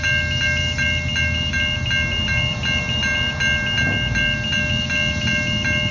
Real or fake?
real